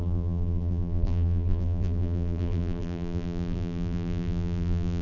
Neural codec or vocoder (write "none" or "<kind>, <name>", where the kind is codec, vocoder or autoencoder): vocoder, BigVGAN v2